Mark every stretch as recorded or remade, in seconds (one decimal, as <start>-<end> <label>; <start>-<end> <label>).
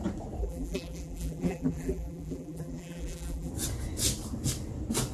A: 0.0-0.4 recorded; 0.4-3.5 remade; 3.5-5.1 recorded